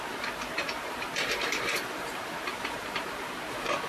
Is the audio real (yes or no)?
no